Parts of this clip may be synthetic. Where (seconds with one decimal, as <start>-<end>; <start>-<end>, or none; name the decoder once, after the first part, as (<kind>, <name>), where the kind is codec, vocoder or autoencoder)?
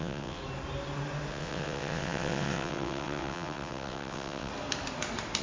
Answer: 0.0-0.4 (vocoder, WaveNeXt); 1.3-4.5